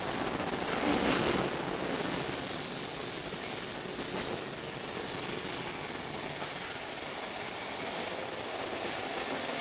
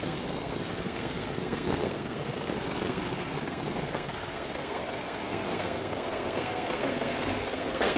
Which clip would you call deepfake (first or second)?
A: second